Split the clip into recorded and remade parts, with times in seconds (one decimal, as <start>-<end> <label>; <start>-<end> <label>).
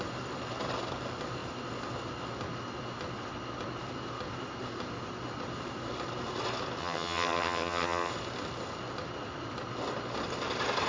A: 0.0-6.8 recorded; 6.8-8.1 remade; 8.1-10.9 recorded